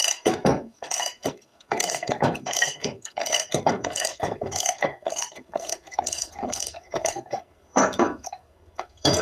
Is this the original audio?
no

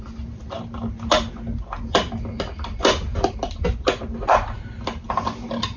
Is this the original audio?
yes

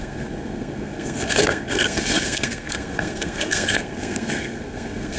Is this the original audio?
no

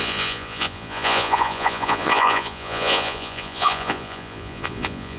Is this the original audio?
no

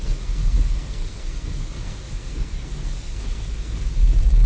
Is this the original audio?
no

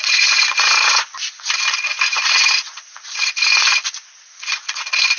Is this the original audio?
no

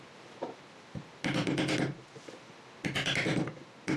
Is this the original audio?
yes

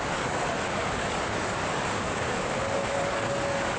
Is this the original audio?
no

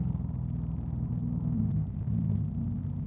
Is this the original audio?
no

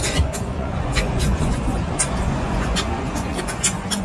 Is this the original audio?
no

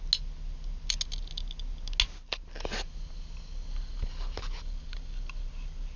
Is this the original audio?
yes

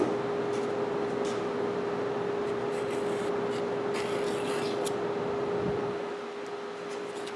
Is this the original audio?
yes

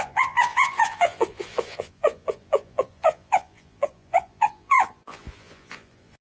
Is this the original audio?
no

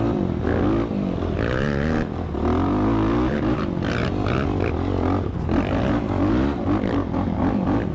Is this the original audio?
yes